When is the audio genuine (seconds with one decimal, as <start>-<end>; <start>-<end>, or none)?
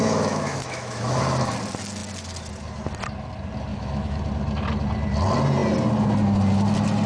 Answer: 1.2-3.7; 4.2-7.1